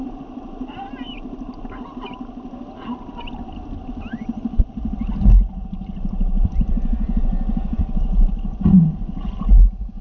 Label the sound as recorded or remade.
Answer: recorded